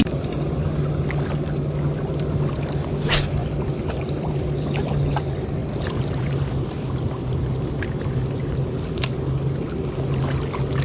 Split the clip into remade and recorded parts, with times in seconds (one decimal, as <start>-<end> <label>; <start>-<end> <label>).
0.0-3.4 recorded; 3.4-4.3 remade; 4.3-5.6 recorded; 5.6-7.6 remade; 7.6-10.8 recorded